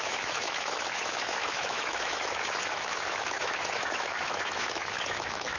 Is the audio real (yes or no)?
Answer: no